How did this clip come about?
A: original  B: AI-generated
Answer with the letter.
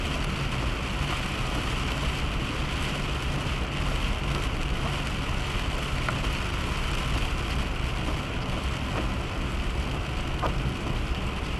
A